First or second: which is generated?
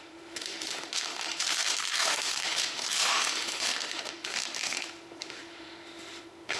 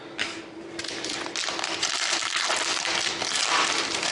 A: first